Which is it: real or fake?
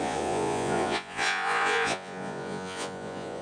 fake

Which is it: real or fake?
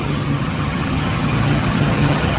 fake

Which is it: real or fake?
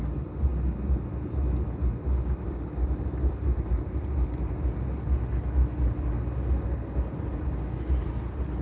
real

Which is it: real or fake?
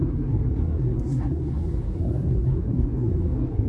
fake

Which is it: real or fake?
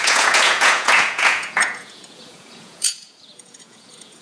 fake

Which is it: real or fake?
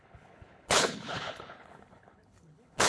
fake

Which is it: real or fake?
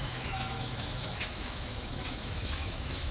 fake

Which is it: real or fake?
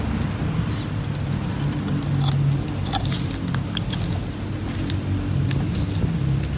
real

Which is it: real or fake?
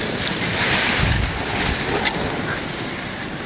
real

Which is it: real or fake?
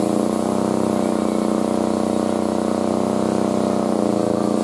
real